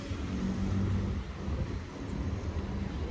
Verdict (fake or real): real